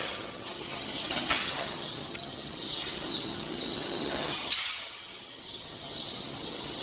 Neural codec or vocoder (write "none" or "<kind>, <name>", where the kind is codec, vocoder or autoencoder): vocoder, HiFi-GAN